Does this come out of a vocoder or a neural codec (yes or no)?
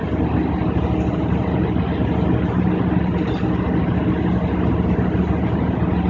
no